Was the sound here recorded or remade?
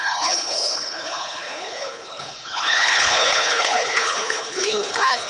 remade